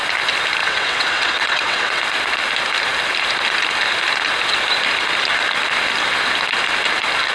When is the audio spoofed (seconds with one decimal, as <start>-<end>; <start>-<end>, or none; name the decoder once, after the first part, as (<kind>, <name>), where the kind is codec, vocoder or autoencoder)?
0.6-2.0 (vocoder, WaveNeXt)